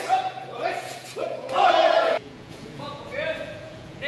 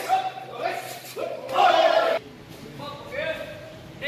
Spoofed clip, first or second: first